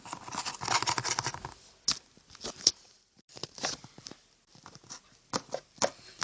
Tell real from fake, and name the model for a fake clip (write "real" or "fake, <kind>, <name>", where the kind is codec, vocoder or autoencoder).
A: real